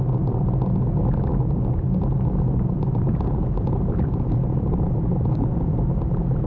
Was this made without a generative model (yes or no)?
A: yes